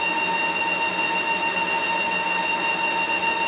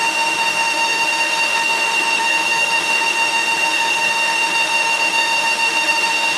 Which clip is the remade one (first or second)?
second